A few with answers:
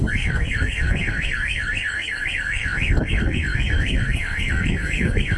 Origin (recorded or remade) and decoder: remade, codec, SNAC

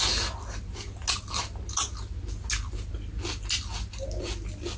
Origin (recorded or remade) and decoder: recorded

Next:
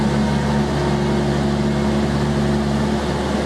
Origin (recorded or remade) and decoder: recorded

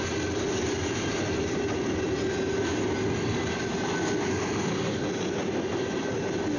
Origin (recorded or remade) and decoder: recorded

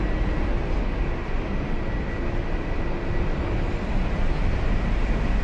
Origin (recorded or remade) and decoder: recorded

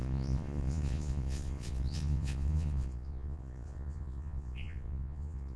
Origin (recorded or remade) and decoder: remade, vocoder, Vocos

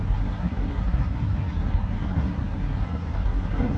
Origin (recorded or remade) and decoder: remade, codec, SNAC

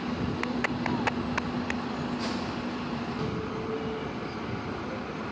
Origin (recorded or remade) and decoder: recorded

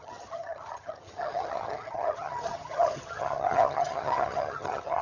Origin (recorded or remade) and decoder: remade, vocoder, HiFi-GAN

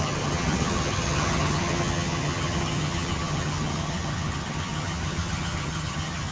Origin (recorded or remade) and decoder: remade, vocoder, HiFi-GAN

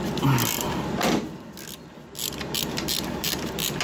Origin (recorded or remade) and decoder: recorded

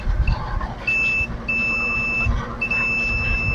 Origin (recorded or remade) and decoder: recorded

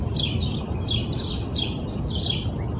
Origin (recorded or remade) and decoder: recorded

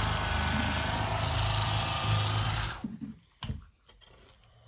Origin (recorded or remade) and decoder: recorded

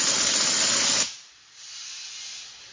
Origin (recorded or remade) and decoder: recorded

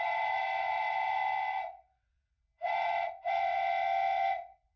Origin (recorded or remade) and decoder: remade, vocoder, WaveNeXt